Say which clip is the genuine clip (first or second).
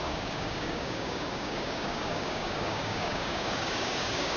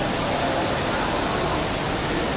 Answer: second